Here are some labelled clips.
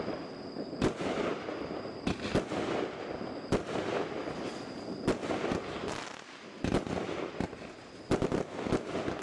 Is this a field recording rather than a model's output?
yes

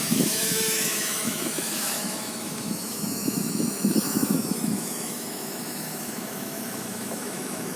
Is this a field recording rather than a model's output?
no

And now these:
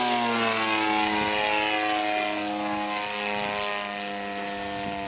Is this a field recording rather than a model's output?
yes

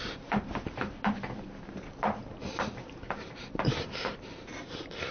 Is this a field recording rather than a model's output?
yes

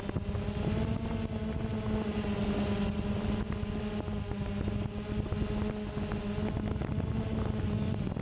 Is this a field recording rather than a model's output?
yes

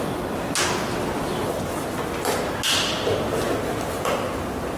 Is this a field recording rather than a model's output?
yes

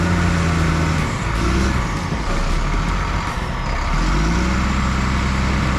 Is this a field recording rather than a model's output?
yes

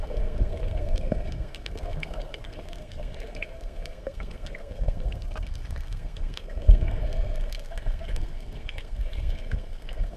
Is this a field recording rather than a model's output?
no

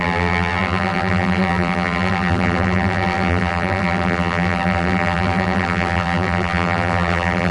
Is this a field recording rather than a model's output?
no